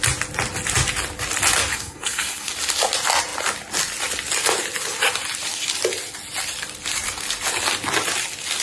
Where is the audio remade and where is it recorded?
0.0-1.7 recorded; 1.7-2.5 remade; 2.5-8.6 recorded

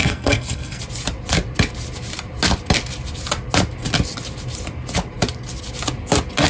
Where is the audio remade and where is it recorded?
0.0-0.8 remade; 0.8-6.5 recorded

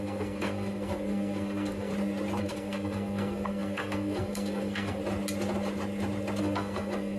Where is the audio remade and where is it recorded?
0.0-1.9 remade; 1.9-2.4 recorded; 2.4-5.0 remade; 5.0-6.4 recorded; 6.4-7.2 remade

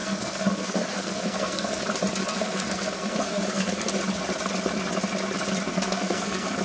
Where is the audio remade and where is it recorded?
0.0-1.8 remade; 1.8-2.2 recorded; 2.2-3.9 remade; 3.9-5.7 recorded; 5.7-6.6 remade

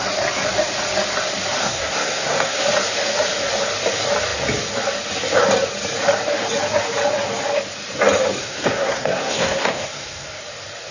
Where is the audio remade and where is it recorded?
0.0-1.6 recorded; 1.6-2.6 remade; 2.6-8.4 recorded; 8.4-10.4 remade; 10.4-10.9 recorded